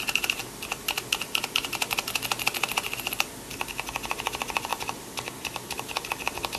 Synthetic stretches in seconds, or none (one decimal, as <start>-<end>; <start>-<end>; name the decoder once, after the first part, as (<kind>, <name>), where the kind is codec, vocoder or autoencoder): none

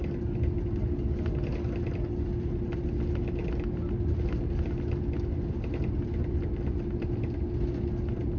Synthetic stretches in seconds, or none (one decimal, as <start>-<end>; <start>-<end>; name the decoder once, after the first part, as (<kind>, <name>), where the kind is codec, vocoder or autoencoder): none

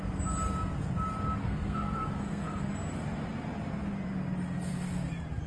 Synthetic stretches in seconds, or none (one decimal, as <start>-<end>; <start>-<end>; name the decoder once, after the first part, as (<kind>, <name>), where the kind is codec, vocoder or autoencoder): 1.4-2.7 (codec, SNAC)